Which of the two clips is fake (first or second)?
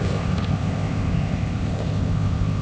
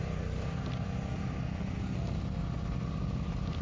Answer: first